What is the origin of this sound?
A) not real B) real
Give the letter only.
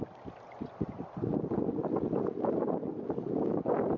B